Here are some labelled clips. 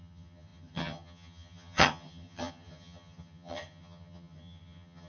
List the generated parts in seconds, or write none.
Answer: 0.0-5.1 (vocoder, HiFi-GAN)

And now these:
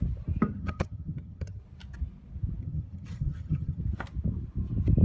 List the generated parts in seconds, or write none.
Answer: 0.5-1.6 (vocoder, HiFi-GAN); 2.6-3.8

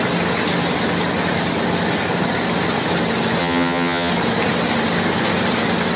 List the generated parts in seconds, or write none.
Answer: 3.4-4.1 (vocoder, HiFi-GAN)

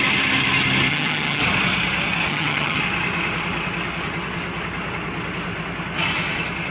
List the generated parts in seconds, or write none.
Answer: 0.9-1.4 (vocoder, HiFi-GAN); 2.3-2.8

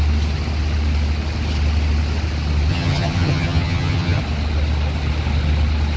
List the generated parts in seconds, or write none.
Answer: 2.7-4.2 (vocoder, HiFi-GAN)

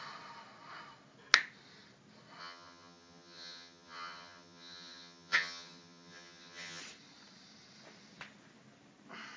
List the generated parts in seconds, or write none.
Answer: 2.4-6.8 (vocoder, HiFi-GAN)